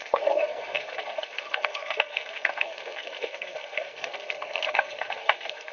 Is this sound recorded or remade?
remade